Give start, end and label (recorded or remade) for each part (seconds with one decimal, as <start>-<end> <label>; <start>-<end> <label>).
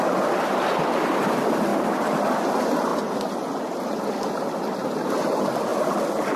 0.0-1.7 recorded; 1.7-2.3 remade; 2.3-6.4 recorded